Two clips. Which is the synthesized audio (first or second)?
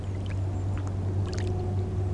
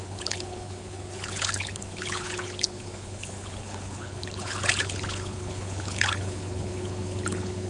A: second